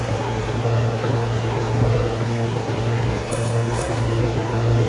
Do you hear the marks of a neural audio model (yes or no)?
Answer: yes